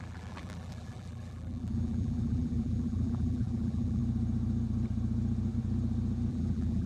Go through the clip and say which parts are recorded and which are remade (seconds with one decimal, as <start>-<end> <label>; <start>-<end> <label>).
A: 0.0-4.0 remade; 4.0-6.3 recorded; 6.3-6.9 remade

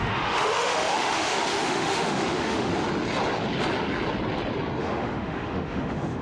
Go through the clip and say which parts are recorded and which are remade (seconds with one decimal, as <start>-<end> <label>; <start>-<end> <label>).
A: 0.0-2.7 remade; 2.7-4.8 recorded; 4.8-6.2 remade

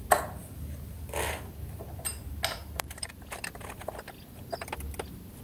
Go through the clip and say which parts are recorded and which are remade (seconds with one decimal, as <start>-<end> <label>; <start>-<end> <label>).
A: 0.0-2.6 recorded; 2.6-3.1 remade; 3.1-5.4 recorded

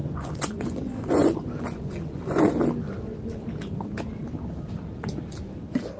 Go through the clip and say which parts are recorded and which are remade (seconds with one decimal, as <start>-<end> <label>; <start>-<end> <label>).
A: 0.0-2.5 remade; 2.5-6.0 recorded